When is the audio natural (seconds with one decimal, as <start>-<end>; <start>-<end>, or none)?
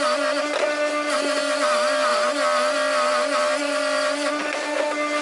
0.0-5.2